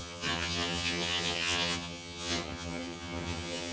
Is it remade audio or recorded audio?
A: remade